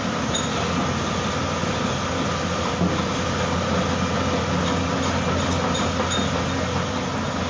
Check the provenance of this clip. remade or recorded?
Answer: recorded